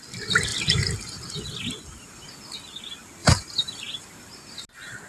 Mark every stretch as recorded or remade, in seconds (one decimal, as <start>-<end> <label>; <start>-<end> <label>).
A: 0.0-0.5 recorded; 0.5-2.3 remade; 2.3-3.2 recorded; 3.2-3.8 remade; 3.8-5.1 recorded